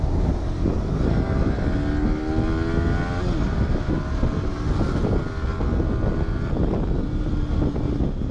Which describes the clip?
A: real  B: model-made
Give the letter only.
A